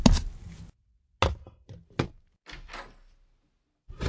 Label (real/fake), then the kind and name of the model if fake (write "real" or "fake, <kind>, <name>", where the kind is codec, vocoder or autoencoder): real